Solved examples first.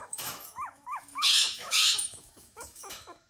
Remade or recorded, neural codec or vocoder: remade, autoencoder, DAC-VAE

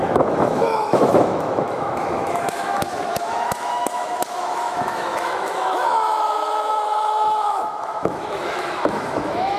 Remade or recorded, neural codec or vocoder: remade, autoencoder, DAC-VAE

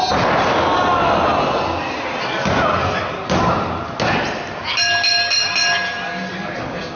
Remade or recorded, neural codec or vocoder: recorded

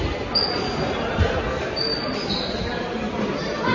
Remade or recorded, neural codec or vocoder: recorded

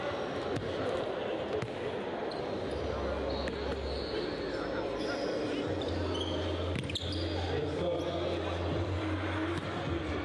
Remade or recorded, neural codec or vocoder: recorded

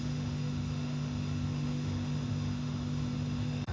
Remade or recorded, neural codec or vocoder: remade, autoencoder, DAC-VAE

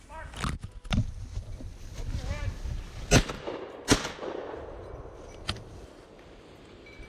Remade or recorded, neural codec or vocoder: recorded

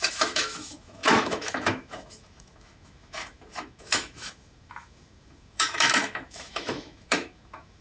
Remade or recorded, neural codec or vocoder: remade, autoencoder, DAC-VAE